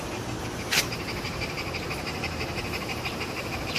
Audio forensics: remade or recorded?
remade